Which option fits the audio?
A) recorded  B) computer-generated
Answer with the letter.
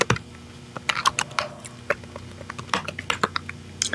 A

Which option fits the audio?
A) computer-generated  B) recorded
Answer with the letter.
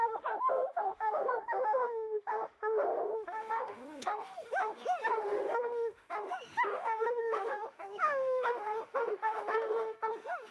A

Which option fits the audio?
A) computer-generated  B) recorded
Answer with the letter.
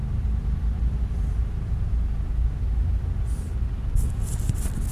B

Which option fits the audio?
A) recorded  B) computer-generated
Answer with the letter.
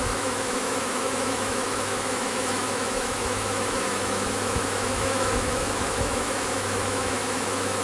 B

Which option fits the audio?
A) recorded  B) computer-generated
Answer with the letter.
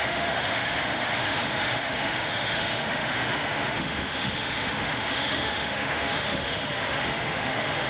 B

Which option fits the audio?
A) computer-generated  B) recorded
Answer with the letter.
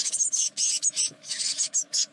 A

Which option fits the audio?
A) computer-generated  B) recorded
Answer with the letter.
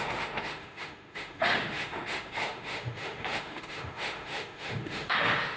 A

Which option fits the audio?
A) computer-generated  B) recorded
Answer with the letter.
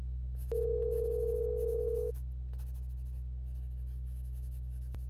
B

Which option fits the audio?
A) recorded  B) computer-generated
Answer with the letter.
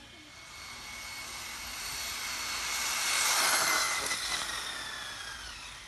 A